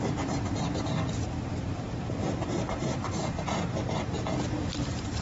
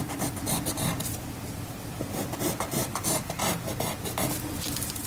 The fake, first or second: first